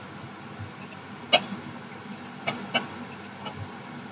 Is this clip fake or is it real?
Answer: real